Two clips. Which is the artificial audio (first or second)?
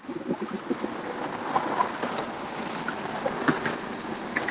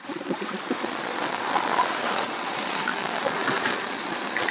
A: second